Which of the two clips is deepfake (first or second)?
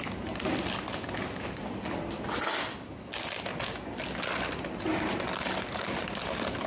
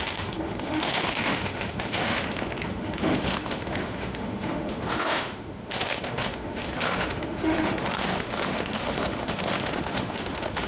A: second